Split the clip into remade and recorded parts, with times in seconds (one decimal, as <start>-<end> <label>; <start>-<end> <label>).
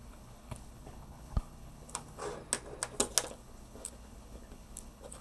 0.0-2.2 remade; 2.2-3.3 recorded; 3.3-5.2 remade